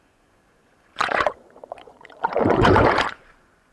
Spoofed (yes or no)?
yes